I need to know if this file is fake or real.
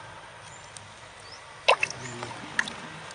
real